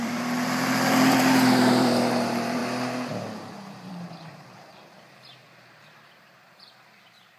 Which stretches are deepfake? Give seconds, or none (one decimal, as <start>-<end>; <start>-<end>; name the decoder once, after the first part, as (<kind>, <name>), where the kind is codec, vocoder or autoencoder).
0.0-2.6 (vocoder, BigVGAN v2); 3.9-7.4